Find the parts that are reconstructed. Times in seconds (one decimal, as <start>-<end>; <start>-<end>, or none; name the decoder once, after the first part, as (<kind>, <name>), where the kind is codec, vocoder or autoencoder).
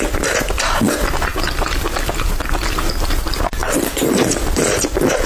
none